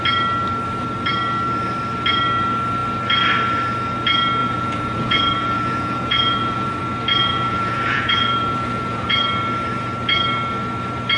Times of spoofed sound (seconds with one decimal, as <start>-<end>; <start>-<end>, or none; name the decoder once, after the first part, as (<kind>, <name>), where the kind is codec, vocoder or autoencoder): 4.4-6.8 (vocoder, Vocos); 7.2-9.2